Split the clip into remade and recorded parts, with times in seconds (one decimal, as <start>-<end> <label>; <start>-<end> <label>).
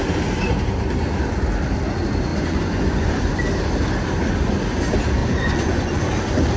0.0-2.3 recorded; 2.3-3.4 remade; 3.4-5.2 recorded; 5.2-6.1 remade; 6.1-6.6 recorded